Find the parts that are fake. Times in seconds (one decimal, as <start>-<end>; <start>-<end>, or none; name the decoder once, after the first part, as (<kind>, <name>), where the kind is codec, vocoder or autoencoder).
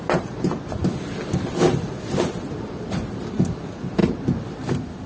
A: none